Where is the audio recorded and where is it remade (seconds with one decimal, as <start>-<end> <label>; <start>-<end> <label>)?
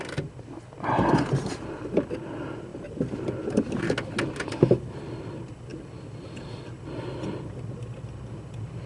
0.0-8.9 recorded